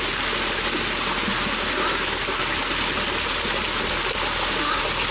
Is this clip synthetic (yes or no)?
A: no